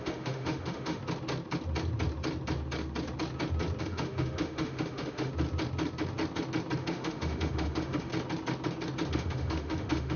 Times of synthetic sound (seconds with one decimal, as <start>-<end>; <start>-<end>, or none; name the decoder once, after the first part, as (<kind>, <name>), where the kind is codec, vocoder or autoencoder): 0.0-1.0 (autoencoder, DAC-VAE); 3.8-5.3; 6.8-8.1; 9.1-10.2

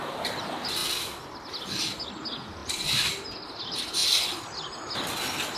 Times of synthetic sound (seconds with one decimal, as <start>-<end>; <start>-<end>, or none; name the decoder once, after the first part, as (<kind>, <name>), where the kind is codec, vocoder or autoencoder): none

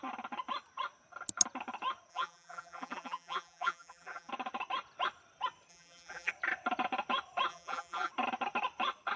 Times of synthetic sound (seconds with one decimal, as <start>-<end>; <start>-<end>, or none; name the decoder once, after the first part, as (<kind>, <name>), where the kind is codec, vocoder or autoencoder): 2.1-4.3 (vocoder, BigVGAN v2); 5.7-6.3; 7.5-8.1

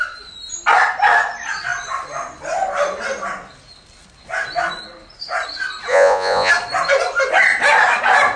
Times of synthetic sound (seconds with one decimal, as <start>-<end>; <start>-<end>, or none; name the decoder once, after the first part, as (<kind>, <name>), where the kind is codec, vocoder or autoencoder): 5.9-6.5 (vocoder, Vocos)

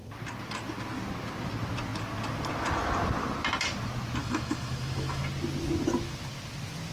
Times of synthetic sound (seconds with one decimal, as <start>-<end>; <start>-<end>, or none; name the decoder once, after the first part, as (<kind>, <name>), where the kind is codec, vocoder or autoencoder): 4.2-5.2 (autoencoder, DAC-VAE)

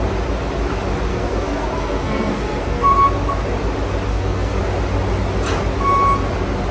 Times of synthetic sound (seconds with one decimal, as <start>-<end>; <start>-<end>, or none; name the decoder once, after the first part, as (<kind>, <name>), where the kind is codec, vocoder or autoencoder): 1.1-2.9 (codec, SNAC); 4.1-4.6